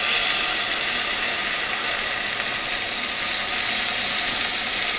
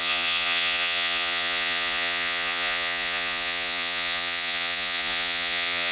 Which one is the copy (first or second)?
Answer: second